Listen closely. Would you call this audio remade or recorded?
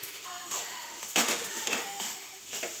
remade